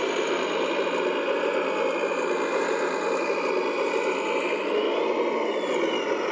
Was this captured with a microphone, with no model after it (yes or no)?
yes